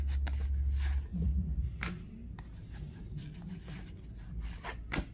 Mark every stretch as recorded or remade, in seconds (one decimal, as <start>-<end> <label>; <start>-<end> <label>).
0.0-1.1 recorded; 1.1-1.8 remade; 1.8-2.2 recorded; 2.2-3.2 remade; 3.2-5.1 recorded